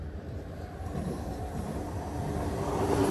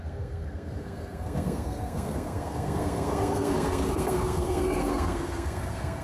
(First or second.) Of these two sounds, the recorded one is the first